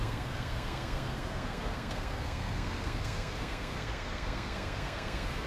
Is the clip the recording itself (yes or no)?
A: no